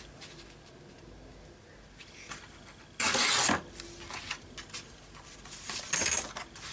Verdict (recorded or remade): recorded